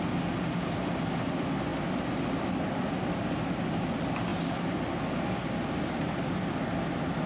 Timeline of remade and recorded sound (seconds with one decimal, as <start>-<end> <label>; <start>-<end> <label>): 0.0-7.3 recorded